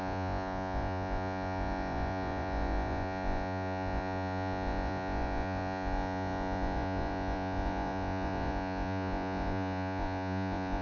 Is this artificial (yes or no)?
yes